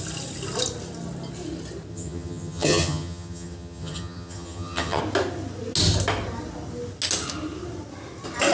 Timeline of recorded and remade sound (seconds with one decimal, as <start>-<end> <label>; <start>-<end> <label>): 0.0-1.9 recorded; 1.9-5.0 remade; 5.0-8.5 recorded